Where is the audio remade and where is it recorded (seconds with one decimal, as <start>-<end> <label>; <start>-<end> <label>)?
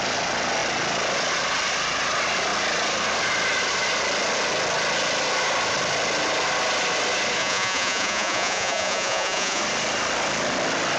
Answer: 0.0-7.4 recorded; 7.4-9.6 remade; 9.6-11.0 recorded